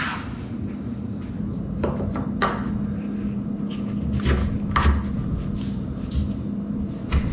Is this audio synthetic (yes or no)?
no